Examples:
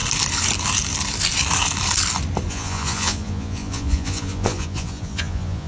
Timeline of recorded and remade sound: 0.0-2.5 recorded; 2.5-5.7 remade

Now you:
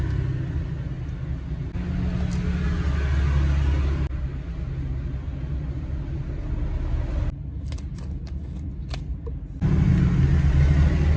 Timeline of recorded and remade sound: 0.0-11.2 recorded

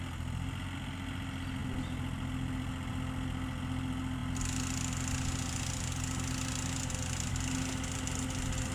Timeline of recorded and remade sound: 0.0-8.7 recorded